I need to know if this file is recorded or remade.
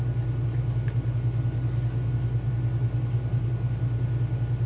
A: recorded